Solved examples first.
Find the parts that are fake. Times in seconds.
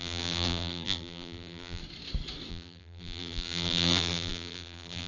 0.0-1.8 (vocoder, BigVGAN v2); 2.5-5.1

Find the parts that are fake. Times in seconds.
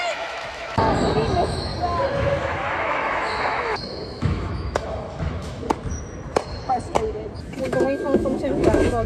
0.0-1.7 (autoencoder, DAC-VAE); 2.4-5.6; 7.6-9.1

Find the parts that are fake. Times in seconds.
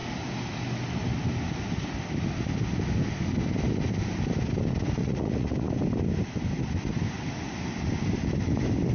5.0-5.7 (vocoder, Vocos)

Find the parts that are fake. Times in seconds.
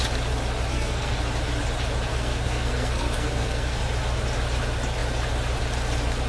0.7-1.2 (codec, SNAC); 2.1-3.8